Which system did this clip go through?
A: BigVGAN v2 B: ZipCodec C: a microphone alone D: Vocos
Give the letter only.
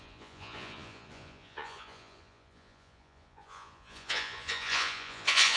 D